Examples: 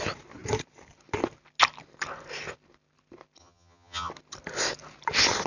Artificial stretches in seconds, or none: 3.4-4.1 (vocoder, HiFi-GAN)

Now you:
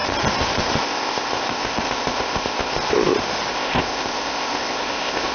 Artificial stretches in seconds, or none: 0.8-2.7 (codec, ZipCodec); 3.5-5.3

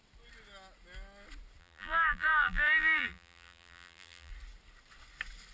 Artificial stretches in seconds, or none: 1.6-4.3 (vocoder, BigVGAN v2)

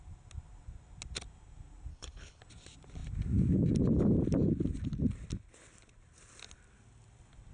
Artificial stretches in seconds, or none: 1.9-2.4 (codec, HILCodec)

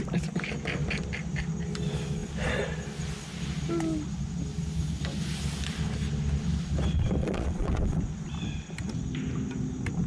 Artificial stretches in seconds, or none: 7.2-8.0 (vocoder, WaveNeXt)

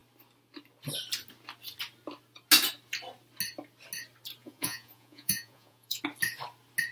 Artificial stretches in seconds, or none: 4.4-6.0 (vocoder, Vocos)